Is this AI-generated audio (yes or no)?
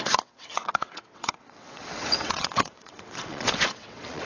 yes